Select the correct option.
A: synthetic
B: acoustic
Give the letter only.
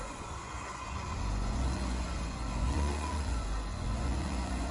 A